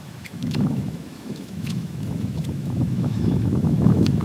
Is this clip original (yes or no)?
no